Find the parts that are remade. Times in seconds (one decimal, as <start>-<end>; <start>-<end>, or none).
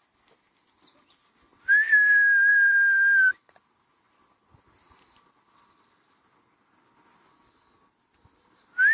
2.5-3.3